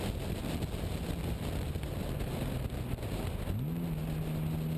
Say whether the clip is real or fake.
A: real